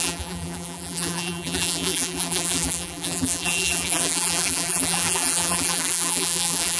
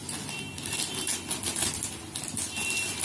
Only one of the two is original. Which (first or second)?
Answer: second